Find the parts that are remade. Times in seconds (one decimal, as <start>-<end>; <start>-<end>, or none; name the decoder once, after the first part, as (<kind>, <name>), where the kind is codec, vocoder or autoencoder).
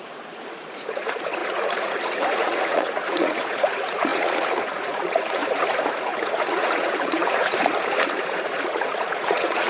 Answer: 0.0-9.7 (vocoder, Vocos)